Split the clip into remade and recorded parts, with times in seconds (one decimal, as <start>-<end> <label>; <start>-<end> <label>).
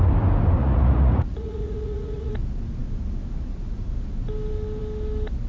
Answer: 0.0-0.6 recorded; 0.6-2.3 remade; 2.3-5.5 recorded